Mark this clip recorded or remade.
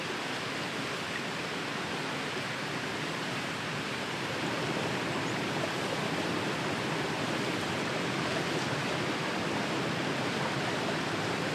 recorded